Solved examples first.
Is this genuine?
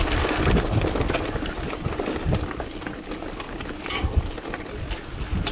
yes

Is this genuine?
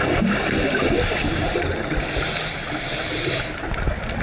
yes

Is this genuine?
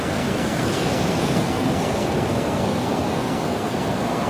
no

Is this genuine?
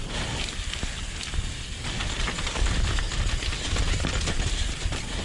yes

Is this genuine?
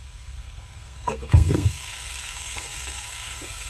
no